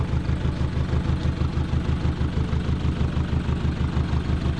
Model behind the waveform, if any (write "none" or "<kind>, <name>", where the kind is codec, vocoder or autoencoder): none